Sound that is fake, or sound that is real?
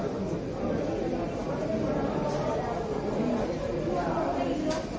real